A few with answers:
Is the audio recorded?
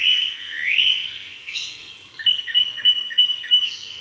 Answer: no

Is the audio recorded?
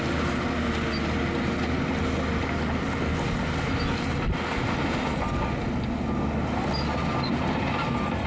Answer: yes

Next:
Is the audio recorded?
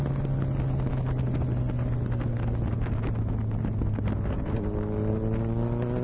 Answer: yes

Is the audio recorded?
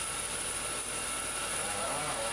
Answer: yes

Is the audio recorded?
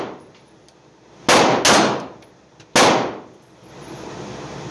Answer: yes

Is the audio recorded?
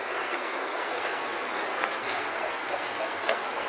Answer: no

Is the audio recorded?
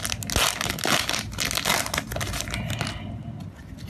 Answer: yes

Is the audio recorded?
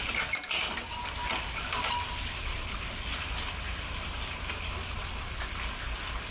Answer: yes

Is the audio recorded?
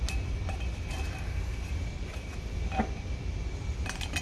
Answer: yes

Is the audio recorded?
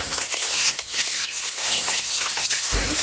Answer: no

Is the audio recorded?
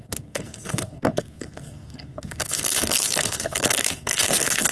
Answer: no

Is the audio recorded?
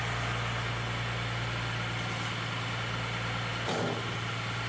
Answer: yes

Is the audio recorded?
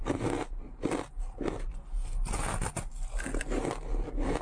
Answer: yes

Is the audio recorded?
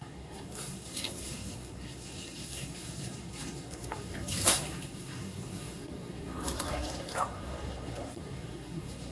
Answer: no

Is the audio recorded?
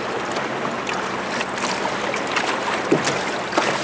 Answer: yes